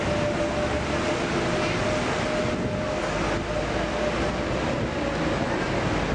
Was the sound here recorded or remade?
recorded